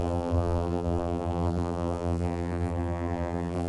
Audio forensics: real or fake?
fake